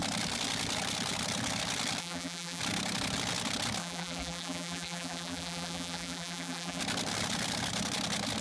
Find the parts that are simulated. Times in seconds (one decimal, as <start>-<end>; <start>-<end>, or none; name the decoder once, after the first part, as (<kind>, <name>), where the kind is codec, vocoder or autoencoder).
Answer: 2.0-2.6 (vocoder, BigVGAN v2); 3.8-6.8